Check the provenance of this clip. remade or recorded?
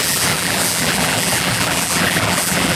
remade